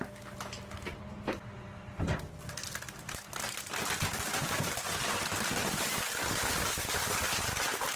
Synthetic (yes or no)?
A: no